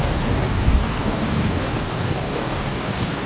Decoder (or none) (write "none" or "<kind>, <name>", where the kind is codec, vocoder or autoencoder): codec, DAC